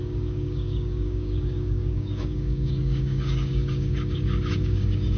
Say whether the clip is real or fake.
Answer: fake